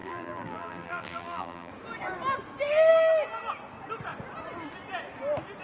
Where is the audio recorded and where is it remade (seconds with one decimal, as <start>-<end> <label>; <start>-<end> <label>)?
0.0-1.7 remade; 1.7-5.6 recorded